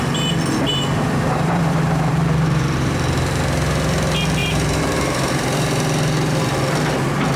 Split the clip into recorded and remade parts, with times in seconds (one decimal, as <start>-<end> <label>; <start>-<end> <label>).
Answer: 0.0-0.7 recorded; 0.7-3.4 remade; 3.4-4.4 recorded; 4.4-5.3 remade; 5.3-7.4 recorded